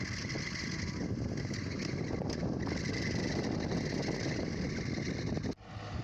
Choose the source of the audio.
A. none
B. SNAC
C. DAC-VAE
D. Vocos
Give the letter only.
A